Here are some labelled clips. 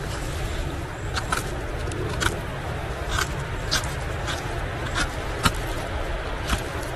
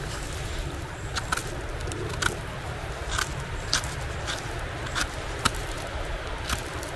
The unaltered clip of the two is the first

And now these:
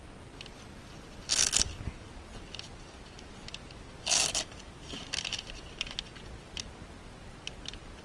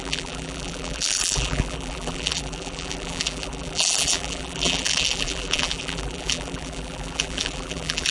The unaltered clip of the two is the first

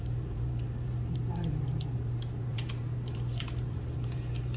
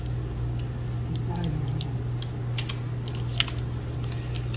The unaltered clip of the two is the second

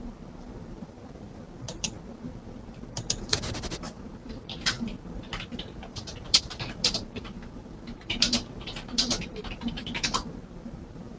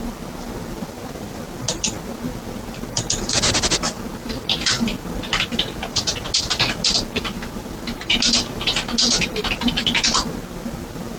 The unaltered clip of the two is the second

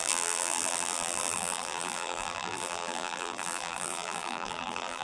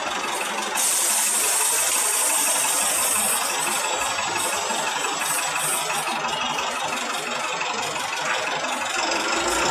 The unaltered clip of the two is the second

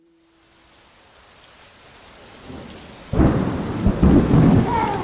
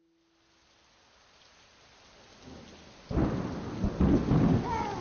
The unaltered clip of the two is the second